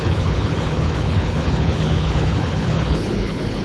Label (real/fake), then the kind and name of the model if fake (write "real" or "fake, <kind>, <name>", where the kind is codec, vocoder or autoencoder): fake, codec, HILCodec